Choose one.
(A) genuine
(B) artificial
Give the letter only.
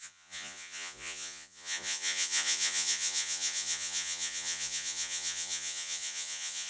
B